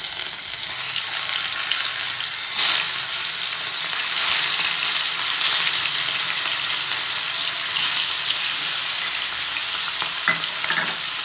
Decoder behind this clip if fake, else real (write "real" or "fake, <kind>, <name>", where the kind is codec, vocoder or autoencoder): real